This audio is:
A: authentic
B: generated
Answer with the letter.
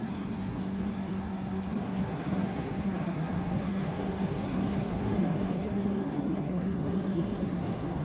B